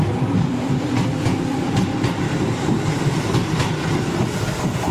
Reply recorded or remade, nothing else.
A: remade